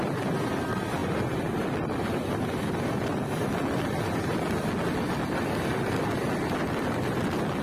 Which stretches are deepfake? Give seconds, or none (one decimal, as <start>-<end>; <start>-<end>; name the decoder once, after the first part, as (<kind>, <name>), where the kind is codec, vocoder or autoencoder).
none